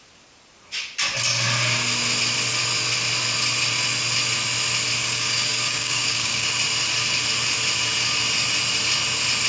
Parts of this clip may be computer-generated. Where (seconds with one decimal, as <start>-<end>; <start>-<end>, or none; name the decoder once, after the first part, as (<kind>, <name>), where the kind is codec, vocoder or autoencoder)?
5.0-6.5 (codec, DAC)